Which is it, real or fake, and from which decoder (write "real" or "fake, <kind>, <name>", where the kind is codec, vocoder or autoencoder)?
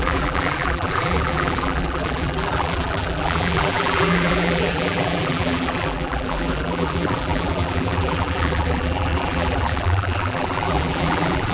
fake, vocoder, BigVGAN v2